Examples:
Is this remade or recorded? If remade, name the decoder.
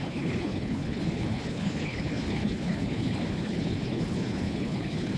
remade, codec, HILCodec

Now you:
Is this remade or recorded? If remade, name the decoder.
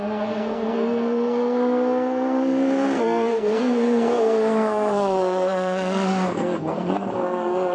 remade, codec, SNAC